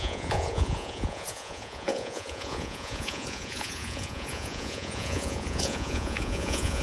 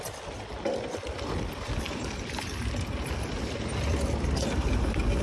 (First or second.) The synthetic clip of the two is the first